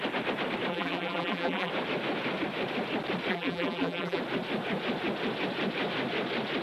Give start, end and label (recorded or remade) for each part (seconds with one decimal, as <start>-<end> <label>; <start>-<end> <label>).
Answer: 0.0-0.7 recorded; 0.7-1.7 remade; 1.7-3.3 recorded; 3.3-4.2 remade; 4.2-6.6 recorded